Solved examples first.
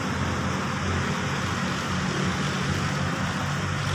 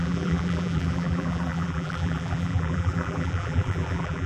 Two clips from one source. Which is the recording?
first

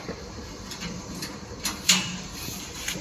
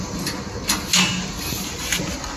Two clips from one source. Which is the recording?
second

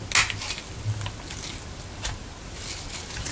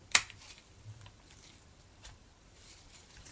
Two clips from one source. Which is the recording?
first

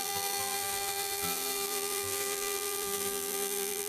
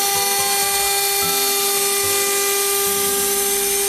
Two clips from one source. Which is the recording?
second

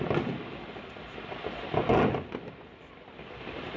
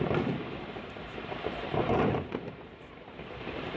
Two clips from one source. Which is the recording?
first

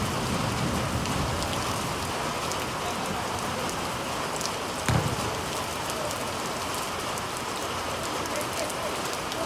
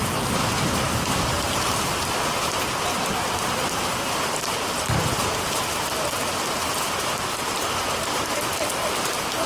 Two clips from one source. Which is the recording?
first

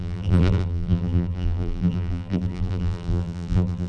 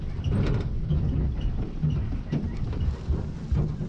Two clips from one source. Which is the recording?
second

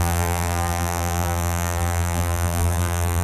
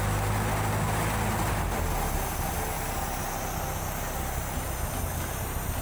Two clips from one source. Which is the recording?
second